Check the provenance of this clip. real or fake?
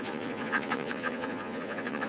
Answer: fake